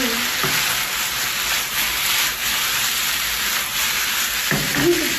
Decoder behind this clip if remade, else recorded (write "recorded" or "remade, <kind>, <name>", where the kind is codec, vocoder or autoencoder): recorded